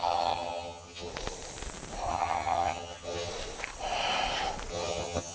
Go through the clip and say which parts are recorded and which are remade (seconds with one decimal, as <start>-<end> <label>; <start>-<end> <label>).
0.0-1.1 remade; 1.1-2.1 recorded; 2.1-3.3 remade; 3.3-4.7 recorded; 4.7-5.3 remade

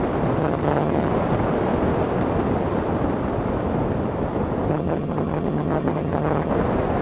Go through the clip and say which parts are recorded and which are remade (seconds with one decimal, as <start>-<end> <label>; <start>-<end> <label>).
0.0-0.4 recorded; 0.4-1.1 remade; 1.1-4.7 recorded; 4.7-6.5 remade; 6.5-7.0 recorded

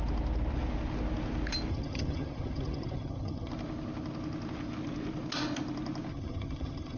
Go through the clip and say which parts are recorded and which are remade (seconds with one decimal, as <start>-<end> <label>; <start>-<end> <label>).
0.0-1.7 recorded; 1.7-3.5 remade; 3.5-6.1 recorded; 6.1-7.0 remade

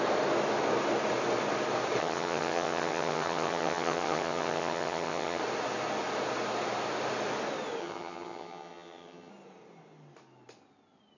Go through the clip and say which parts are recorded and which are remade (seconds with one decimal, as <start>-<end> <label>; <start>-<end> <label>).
0.0-2.0 recorded; 2.0-5.4 remade; 5.4-7.8 recorded; 7.8-9.3 remade; 9.3-11.2 recorded